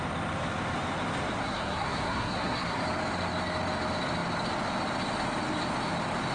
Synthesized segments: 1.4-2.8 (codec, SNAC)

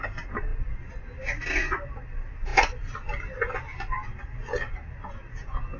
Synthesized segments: none

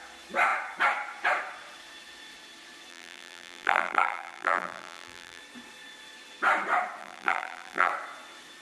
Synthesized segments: 2.9-5.4 (vocoder, BigVGAN v2); 7.0-7.9

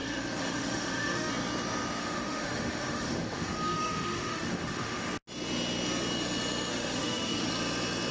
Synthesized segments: 0.0-1.3 (autoencoder, DAC-VAE); 2.0-5.1; 6.7-7.5

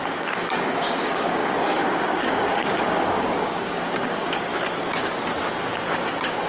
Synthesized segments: 0.0-4.5 (codec, DAC); 5.7-6.5

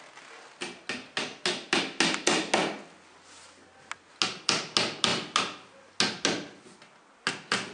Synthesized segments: none